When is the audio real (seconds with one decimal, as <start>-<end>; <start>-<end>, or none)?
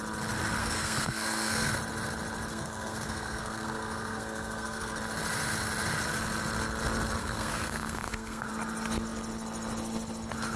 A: 0.0-0.6; 1.7-2.5; 5.0-7.2; 8.5-10.6